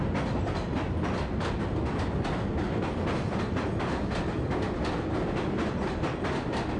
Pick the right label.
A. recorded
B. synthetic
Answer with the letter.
A